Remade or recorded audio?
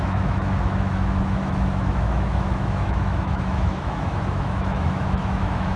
remade